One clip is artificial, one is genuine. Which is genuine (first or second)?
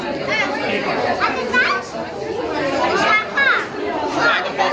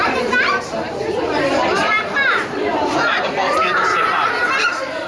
first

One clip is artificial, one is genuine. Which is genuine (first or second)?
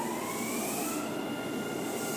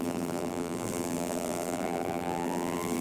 first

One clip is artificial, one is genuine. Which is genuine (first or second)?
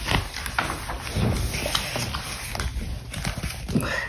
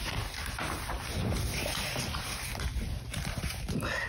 first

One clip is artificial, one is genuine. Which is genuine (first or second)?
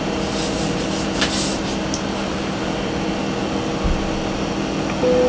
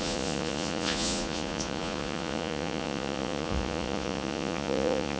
first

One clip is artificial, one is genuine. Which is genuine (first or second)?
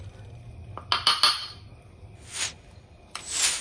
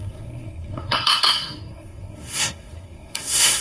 first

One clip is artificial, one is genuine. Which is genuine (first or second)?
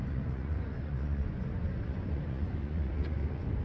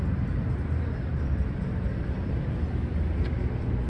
second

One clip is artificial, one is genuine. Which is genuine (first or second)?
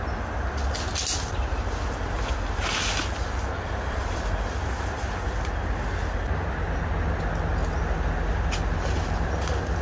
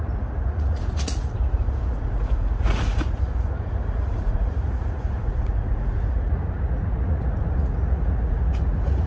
first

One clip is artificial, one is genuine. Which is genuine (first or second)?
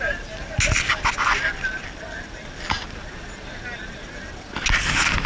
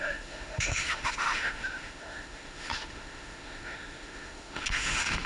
first